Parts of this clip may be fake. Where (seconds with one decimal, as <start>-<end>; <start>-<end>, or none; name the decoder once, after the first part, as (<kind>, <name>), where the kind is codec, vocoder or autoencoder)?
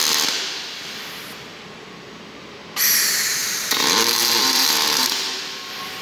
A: 1.5-2.2 (vocoder, BigVGAN v2); 3.4-5.1